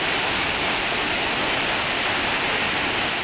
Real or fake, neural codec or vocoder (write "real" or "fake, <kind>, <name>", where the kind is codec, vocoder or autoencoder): real